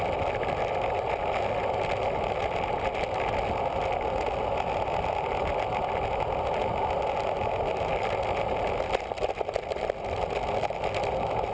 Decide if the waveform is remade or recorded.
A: recorded